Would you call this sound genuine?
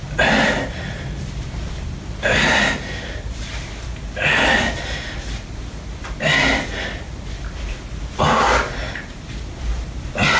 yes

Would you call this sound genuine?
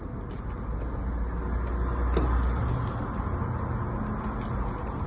yes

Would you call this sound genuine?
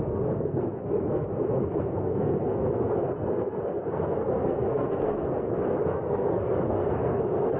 no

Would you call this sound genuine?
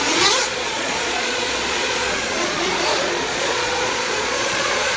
no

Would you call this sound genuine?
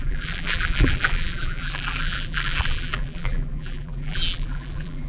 no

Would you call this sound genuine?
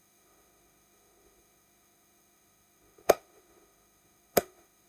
no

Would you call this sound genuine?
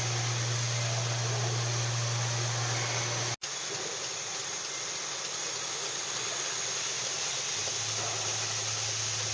yes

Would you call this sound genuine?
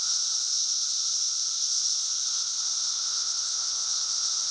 no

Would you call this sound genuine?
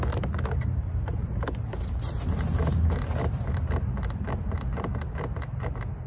yes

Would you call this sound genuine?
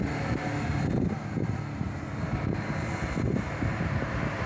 no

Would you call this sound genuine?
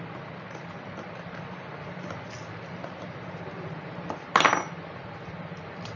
yes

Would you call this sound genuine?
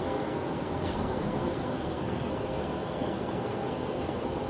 no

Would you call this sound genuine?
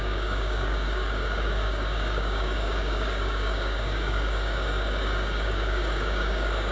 no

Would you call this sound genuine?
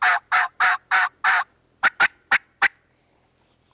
yes